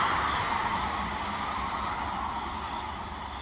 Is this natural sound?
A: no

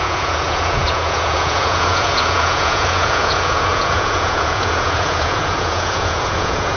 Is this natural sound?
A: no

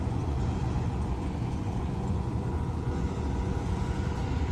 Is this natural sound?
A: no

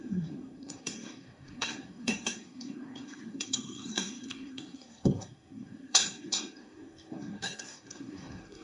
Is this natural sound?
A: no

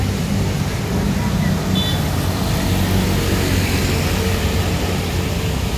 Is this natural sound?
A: yes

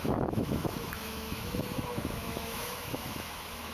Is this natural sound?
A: no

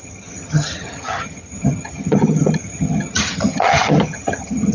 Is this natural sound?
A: no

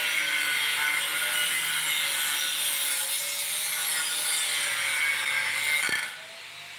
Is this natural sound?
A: yes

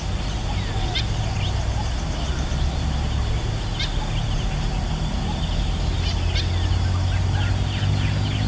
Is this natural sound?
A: yes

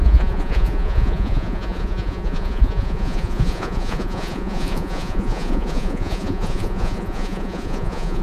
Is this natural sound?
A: no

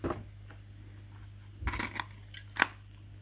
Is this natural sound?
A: yes